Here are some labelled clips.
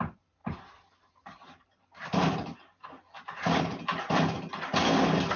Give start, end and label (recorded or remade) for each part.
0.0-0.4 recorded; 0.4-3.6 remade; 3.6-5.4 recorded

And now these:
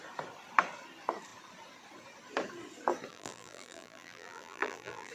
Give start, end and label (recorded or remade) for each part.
0.0-3.1 recorded; 3.1-5.1 remade

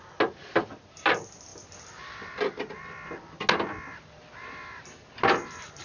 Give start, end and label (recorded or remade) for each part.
0.0-5.8 recorded

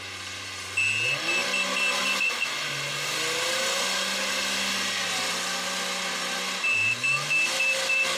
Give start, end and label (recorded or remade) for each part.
0.0-8.2 recorded

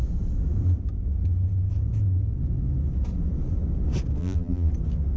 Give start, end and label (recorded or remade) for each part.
0.0-4.2 recorded; 4.2-4.7 remade; 4.7-5.2 recorded